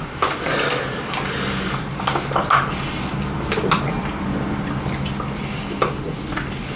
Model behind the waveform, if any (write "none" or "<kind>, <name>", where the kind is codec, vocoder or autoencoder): none